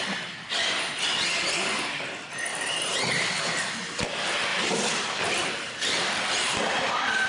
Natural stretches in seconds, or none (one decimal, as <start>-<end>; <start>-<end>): 0.0-2.5; 3.1-4.5; 6.0-7.3